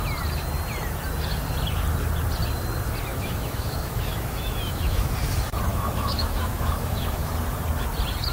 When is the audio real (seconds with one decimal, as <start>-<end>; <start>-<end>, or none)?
0.0-3.1; 5.1-5.7; 7.3-8.3